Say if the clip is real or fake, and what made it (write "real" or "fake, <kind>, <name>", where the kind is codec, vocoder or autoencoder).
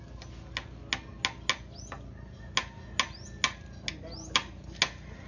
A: real